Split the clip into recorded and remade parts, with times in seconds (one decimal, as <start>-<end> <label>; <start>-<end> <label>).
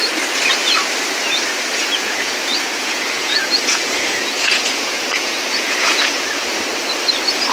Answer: 0.0-1.8 recorded; 1.8-6.3 remade; 6.3-7.5 recorded